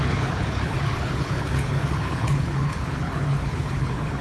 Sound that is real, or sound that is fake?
fake